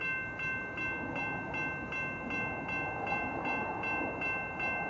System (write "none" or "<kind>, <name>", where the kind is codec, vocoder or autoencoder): none